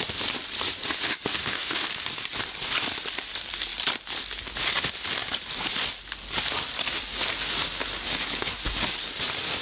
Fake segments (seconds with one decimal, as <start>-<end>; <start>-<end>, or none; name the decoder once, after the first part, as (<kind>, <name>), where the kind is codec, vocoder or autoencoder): 1.4-1.9 (autoencoder, DAC-VAE)